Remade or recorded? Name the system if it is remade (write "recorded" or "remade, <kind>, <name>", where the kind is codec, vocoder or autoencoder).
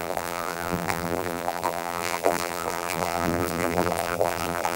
remade, vocoder, BigVGAN v2